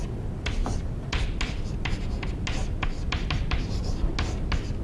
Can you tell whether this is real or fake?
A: real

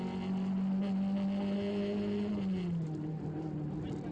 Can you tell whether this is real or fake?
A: real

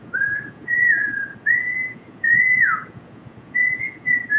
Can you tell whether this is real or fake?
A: fake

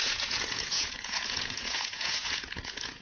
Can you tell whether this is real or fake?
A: fake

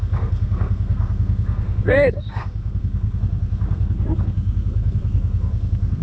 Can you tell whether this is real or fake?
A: fake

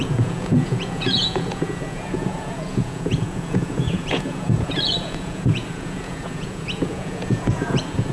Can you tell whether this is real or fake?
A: fake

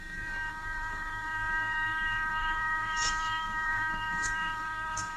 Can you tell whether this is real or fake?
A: fake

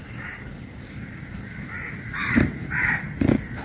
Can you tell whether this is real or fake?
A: real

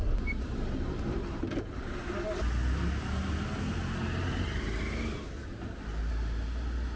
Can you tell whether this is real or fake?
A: real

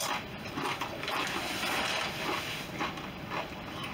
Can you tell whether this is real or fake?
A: real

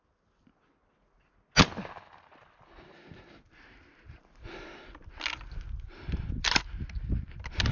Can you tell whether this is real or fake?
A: real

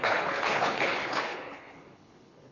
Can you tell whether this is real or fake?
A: fake